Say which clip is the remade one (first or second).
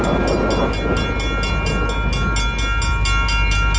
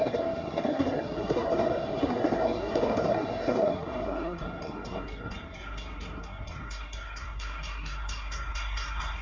second